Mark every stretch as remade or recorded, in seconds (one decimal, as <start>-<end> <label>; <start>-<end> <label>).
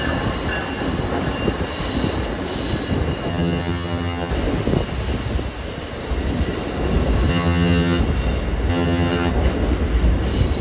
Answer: 0.0-3.3 recorded; 3.3-4.3 remade; 4.3-7.3 recorded; 7.3-8.0 remade; 8.0-8.7 recorded; 8.7-9.3 remade; 9.3-10.6 recorded